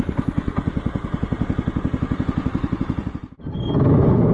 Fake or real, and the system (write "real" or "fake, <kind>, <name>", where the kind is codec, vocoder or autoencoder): real